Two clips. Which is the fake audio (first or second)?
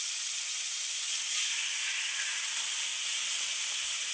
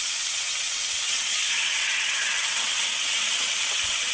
second